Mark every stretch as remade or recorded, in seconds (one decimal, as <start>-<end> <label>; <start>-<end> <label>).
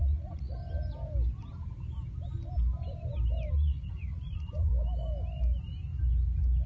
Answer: 0.0-0.6 remade; 0.6-3.5 recorded; 3.5-4.7 remade; 4.7-6.7 recorded